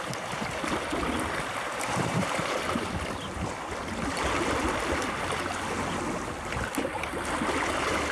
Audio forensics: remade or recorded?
recorded